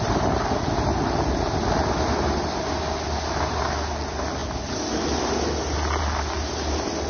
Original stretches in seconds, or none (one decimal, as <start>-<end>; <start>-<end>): 0.0-7.1